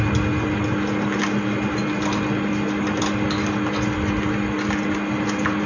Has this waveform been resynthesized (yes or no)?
no